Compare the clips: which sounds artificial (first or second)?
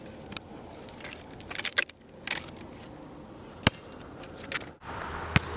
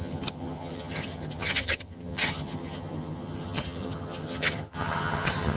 second